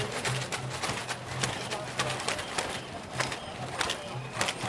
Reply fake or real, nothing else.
real